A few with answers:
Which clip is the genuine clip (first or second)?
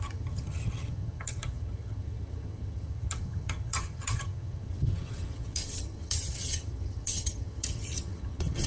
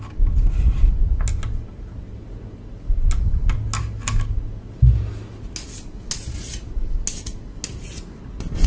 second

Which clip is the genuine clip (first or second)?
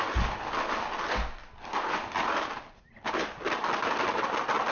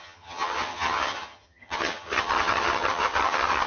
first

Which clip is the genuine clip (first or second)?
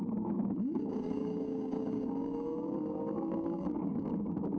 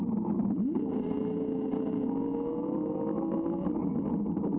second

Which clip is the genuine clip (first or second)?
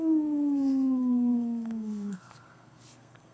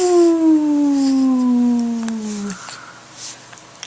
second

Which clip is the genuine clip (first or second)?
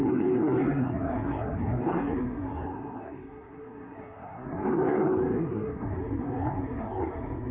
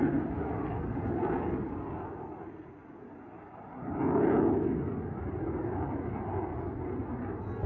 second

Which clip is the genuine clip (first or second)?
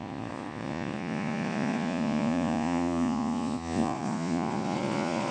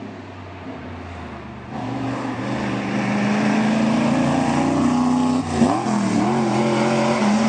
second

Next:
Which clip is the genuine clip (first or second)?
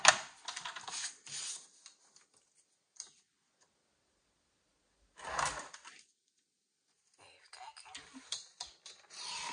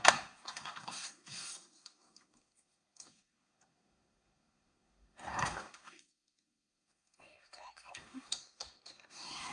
first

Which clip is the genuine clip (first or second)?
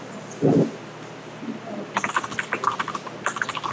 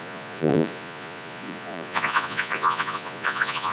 first